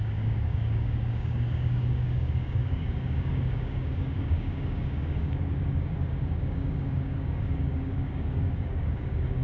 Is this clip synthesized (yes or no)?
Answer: yes